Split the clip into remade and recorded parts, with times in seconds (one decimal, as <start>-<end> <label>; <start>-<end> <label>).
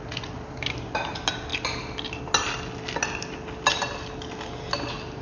0.0-5.2 recorded